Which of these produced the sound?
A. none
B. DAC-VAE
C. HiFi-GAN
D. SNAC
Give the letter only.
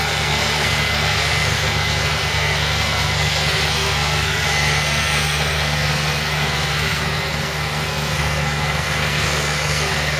D